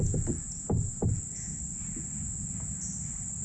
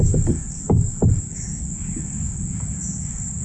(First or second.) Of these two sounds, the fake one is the second